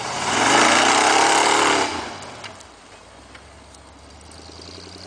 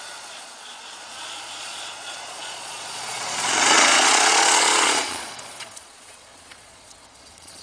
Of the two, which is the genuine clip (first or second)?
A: first